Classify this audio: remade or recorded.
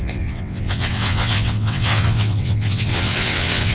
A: remade